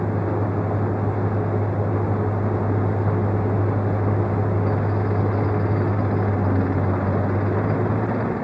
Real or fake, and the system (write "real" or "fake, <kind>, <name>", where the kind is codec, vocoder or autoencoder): real